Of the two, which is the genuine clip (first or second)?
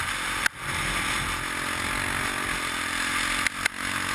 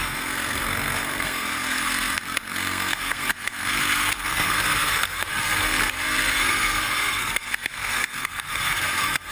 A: first